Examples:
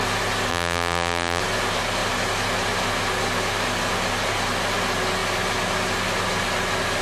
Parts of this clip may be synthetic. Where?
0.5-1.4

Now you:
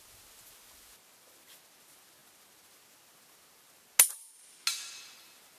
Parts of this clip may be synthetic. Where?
none

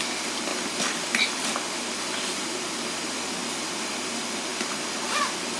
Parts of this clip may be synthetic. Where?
0.0-0.5; 1.5-4.5; 5.1-5.6

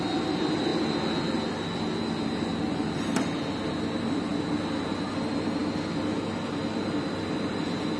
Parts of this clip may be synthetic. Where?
0.0-0.7; 2.7-4.3; 5.1-5.6; 6.7-8.0

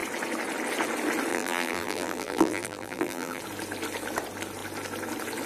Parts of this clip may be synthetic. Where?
1.3-3.4

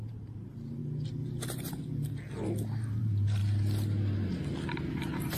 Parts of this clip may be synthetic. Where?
0.0-0.8; 2.6-3.4; 4.9-5.4

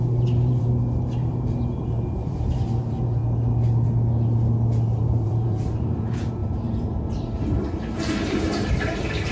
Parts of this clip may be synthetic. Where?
0.0-3.2; 5.0-9.3

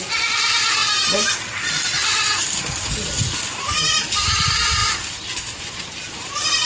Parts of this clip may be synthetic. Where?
0.0-0.8; 3.6-4.8; 5.6-6.6